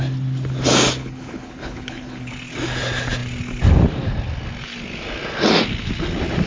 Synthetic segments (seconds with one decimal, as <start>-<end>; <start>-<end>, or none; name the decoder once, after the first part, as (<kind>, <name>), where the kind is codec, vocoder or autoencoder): 1.0-2.3 (codec, HILCodec)